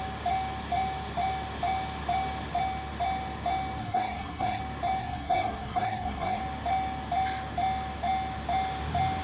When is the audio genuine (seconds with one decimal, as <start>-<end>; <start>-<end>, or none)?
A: 0.0-3.8; 4.6-5.0; 6.4-9.2